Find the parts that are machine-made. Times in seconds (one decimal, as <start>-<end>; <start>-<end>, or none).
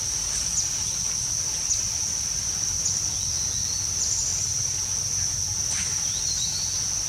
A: 4.3-6.3